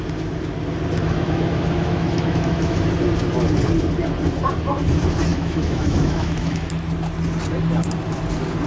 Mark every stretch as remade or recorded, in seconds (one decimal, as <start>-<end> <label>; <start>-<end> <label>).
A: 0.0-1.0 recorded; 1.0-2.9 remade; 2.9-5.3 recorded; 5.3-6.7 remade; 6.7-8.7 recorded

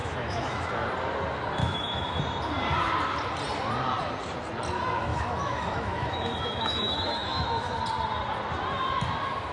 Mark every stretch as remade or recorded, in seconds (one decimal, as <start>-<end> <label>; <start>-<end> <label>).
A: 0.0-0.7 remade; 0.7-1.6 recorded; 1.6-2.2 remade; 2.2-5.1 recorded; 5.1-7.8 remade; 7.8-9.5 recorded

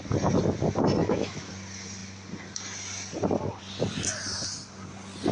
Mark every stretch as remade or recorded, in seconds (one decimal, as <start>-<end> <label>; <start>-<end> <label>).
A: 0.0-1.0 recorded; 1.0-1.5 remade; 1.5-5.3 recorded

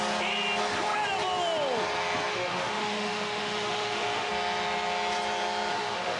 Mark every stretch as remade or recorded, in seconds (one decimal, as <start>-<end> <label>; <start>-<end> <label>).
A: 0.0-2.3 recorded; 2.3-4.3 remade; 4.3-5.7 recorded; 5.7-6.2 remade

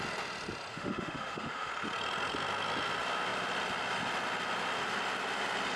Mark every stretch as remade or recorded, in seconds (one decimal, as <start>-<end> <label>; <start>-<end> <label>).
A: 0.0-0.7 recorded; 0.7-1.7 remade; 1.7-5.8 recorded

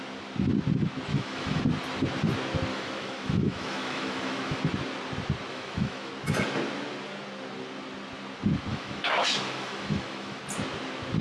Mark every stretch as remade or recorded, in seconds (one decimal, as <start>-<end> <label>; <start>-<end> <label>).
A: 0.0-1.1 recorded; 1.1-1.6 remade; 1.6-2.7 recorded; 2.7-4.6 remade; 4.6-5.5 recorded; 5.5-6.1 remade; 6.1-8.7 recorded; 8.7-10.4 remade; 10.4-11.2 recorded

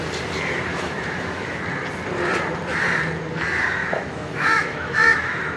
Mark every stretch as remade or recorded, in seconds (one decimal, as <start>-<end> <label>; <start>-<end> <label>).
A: 0.0-0.7 recorded; 0.7-1.6 remade; 1.6-3.8 recorded; 3.8-5.6 remade